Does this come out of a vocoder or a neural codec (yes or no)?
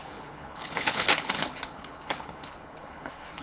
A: yes